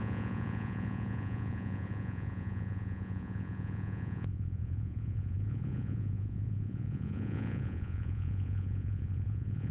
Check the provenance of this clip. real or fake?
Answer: fake